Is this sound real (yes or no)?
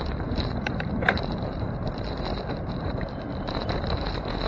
no